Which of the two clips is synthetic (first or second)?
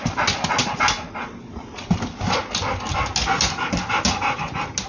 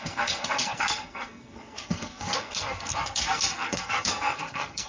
second